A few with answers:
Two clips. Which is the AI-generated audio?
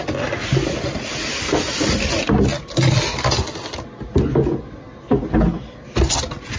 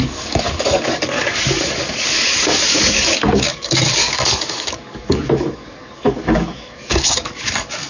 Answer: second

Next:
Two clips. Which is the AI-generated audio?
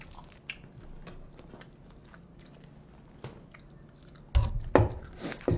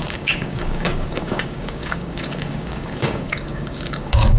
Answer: second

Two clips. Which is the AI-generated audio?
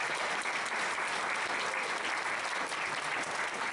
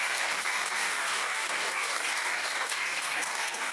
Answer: second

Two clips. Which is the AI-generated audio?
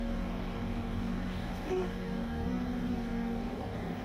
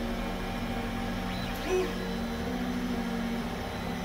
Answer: first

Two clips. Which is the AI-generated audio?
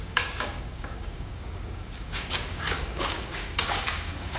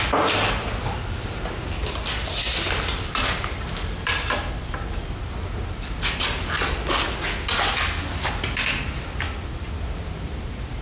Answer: first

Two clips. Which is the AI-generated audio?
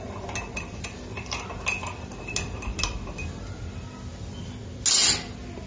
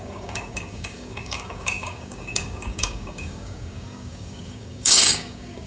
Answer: second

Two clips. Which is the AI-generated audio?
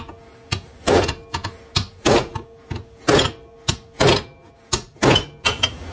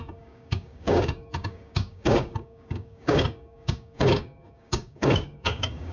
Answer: second